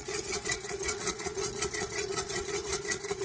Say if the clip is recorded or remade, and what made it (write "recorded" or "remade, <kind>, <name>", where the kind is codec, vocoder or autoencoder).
remade, vocoder, Vocos